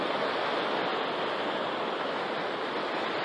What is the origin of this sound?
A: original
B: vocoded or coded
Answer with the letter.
A